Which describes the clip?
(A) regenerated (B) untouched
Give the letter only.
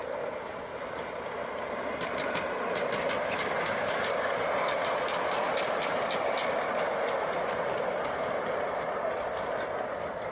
B